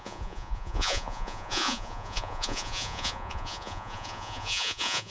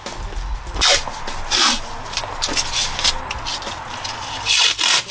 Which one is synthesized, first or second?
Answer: first